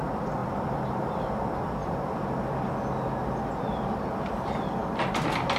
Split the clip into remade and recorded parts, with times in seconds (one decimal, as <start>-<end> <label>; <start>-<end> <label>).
0.0-0.4 recorded; 0.4-1.3 remade; 1.3-5.6 recorded